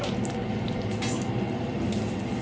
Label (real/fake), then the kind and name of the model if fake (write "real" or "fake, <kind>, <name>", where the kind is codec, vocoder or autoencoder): real